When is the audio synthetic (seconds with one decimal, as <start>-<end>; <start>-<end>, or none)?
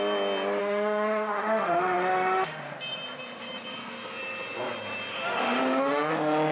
0.6-2.6; 5.1-6.1